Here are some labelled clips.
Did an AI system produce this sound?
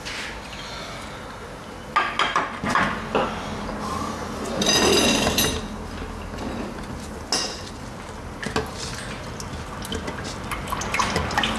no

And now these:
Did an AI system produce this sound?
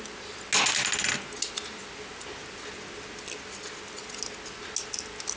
no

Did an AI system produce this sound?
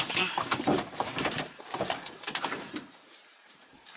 yes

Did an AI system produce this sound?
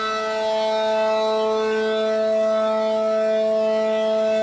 no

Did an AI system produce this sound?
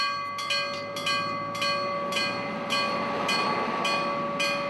no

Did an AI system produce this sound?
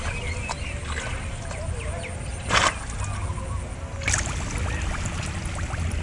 no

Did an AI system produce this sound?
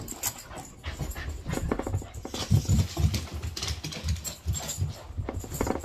no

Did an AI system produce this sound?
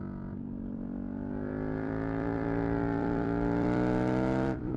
yes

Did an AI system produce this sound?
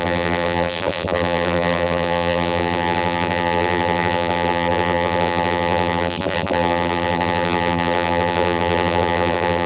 yes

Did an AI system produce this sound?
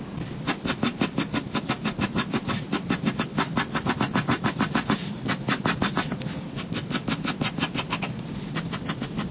yes